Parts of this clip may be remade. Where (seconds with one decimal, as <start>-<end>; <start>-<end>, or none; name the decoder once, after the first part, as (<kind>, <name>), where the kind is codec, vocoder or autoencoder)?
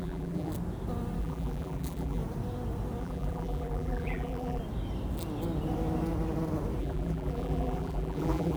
0.0-0.5 (vocoder, BigVGAN v2); 1.2-2.2; 3.0-4.6; 6.8-8.6